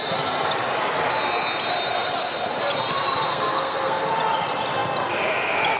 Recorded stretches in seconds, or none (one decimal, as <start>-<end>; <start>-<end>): 0.0-3.3; 4.0-5.8